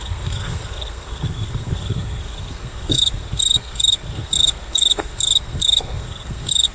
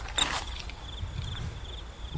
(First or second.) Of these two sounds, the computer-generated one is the first